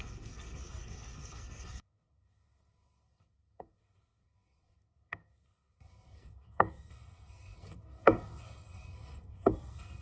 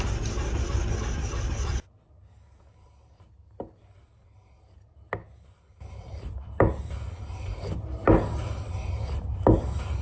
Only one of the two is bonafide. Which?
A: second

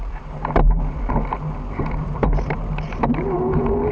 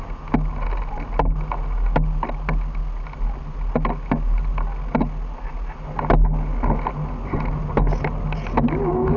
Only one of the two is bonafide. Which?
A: second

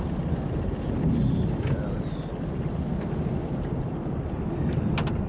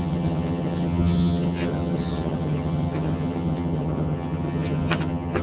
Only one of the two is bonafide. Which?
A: first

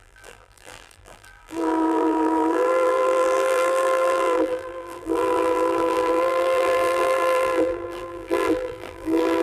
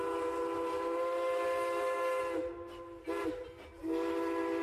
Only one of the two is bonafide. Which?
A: second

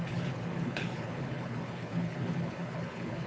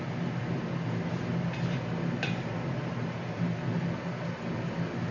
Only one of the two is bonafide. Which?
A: second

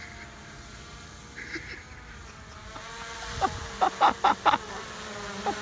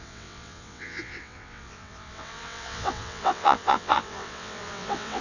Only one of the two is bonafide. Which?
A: first